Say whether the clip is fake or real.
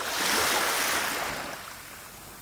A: real